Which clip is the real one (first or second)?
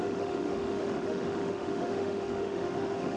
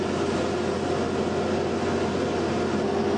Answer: second